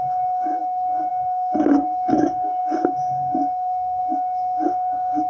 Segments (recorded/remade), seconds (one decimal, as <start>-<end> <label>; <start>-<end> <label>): 0.0-5.3 remade